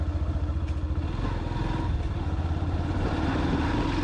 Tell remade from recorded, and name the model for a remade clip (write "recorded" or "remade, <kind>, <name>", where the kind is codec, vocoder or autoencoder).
recorded